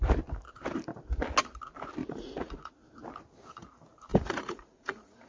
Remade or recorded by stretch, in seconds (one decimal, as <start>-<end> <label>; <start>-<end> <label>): 0.0-2.0 recorded; 2.0-2.7 remade; 2.7-4.1 recorded; 4.1-5.3 remade